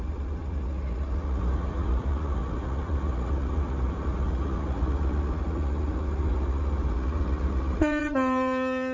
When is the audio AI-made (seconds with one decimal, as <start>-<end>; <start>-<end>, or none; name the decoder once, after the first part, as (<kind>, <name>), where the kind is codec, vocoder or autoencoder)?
0.0-8.9 (vocoder, Vocos)